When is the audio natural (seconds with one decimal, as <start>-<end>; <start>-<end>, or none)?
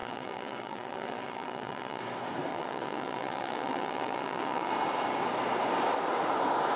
2.0-2.5; 4.7-6.8